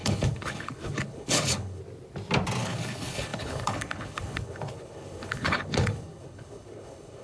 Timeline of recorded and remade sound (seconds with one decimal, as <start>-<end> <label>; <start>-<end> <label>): 0.0-1.8 remade; 1.8-2.6 recorded; 2.6-7.2 remade